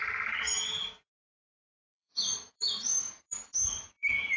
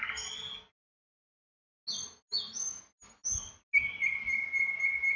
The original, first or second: second